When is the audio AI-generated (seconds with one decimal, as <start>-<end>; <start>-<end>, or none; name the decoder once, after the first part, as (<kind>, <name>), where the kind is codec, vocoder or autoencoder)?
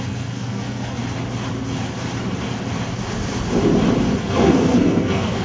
0.0-1.0 (codec, SNAC); 4.2-5.4